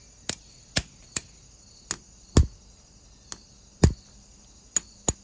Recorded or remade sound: recorded